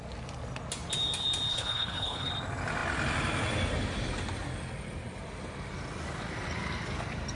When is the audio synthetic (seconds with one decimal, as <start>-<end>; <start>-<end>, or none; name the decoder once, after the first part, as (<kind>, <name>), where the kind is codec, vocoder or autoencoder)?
1.5-2.3 (codec, HILCodec)